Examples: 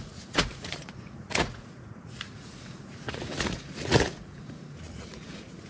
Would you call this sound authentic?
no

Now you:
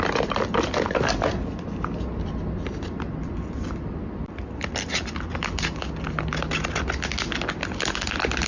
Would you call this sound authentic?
yes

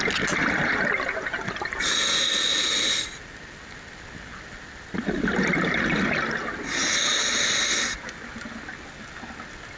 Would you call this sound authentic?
yes